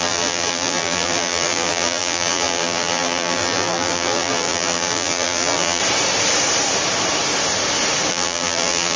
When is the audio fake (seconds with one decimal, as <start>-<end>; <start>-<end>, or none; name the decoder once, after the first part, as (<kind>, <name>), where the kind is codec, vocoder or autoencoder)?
0.0-5.8 (vocoder, BigVGAN v2); 8.1-9.0